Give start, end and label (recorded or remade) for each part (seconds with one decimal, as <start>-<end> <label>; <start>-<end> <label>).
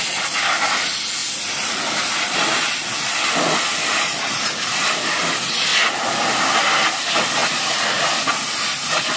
0.0-9.2 recorded